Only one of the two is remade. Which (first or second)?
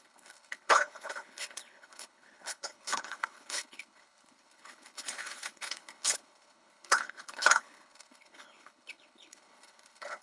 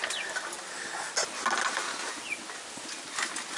first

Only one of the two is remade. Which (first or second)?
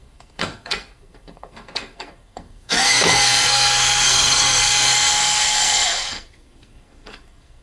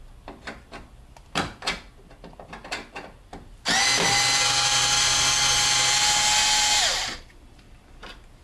first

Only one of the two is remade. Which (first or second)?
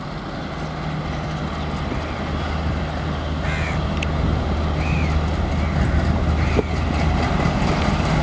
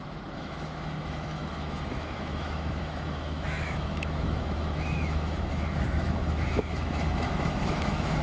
second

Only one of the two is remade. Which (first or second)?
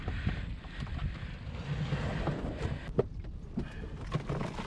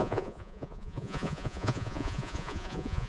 second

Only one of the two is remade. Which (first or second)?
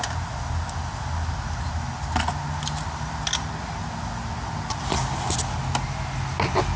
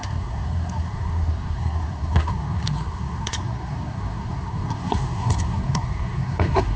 second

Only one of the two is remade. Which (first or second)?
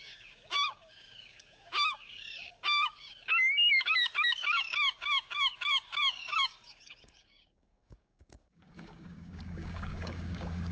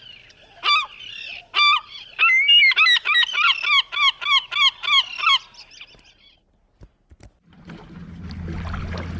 first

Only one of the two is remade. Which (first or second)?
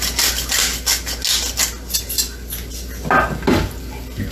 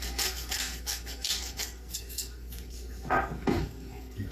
second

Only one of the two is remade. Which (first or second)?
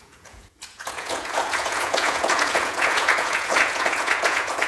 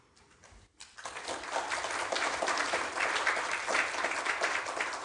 first